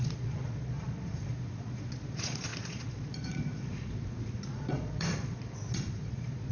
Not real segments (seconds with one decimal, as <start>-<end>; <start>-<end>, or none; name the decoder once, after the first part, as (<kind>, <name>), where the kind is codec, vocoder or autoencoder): 0.0-6.5 (vocoder, Vocos)